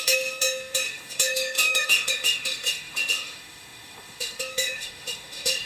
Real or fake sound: fake